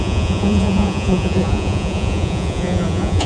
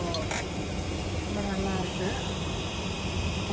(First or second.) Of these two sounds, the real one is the second